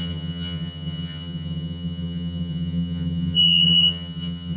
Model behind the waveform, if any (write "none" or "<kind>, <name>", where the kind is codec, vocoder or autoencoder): vocoder, HiFi-GAN